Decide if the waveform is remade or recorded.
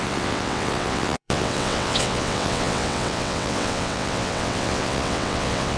remade